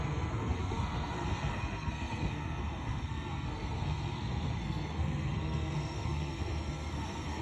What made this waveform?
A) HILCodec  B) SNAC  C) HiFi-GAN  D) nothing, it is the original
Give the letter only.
B